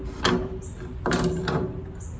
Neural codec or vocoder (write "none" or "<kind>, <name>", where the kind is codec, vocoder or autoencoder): none